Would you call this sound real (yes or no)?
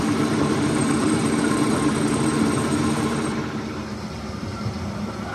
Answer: no